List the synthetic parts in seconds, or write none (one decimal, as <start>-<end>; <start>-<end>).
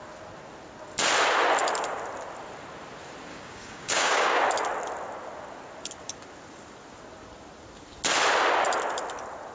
3.3-4.4